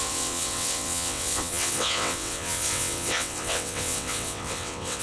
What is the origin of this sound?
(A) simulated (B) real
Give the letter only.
A